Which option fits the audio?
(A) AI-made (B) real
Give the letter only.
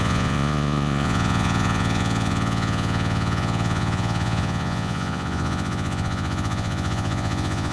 A